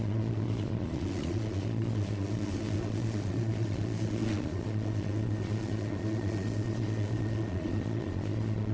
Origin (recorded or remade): remade